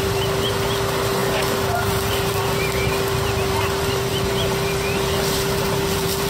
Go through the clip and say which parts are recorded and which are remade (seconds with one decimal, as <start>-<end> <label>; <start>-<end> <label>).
0.0-1.2 recorded; 1.2-2.3 remade; 2.3-6.3 recorded